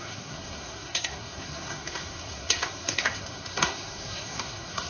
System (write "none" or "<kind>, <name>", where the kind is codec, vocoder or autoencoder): codec, SNAC